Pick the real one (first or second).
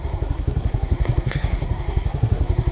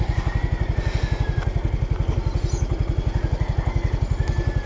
second